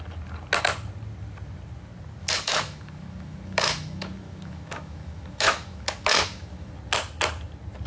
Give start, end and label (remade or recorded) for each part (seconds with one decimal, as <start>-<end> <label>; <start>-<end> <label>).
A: 0.0-2.2 recorded; 2.2-6.7 remade; 6.7-7.9 recorded